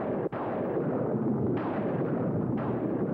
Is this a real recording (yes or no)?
no